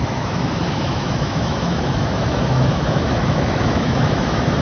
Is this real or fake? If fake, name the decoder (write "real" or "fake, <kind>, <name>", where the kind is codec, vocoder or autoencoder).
fake, autoencoder, DAC-VAE